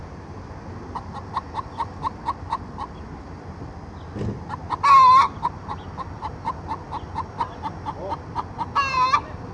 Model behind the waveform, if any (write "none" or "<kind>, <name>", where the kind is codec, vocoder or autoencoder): none